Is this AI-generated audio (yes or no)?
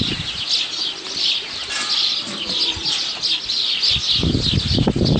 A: no